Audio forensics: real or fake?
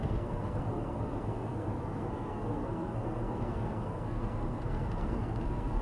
fake